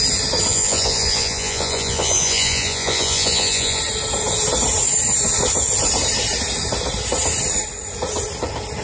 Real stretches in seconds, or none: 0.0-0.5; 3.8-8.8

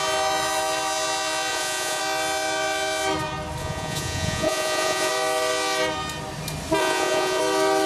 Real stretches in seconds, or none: 0.0-1.5; 2.0-3.6; 5.1-6.8; 7.4-7.9

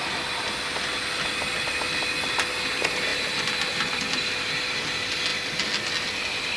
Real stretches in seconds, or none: 0.0-6.6

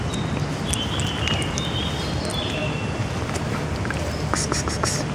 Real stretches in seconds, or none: 0.0-5.1

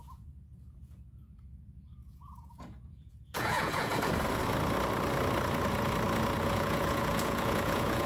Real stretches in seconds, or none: 3.9-6.4

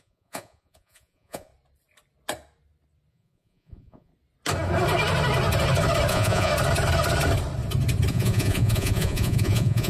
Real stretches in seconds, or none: 1.5-3.1; 4.1-6.1; 6.5-8.1